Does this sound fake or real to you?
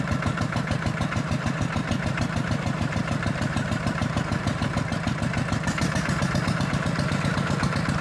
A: fake